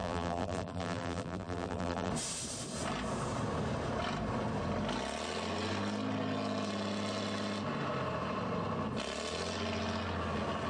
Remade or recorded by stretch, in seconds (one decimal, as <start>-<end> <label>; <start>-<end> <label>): 0.0-2.1 remade; 2.1-10.7 recorded